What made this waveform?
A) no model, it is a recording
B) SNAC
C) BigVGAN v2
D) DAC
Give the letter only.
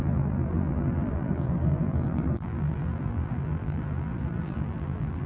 C